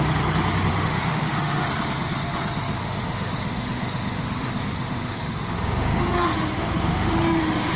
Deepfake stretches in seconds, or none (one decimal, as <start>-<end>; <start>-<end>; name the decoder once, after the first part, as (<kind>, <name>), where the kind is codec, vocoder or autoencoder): 0.7-1.7 (autoencoder, DAC-VAE); 2.8-7.8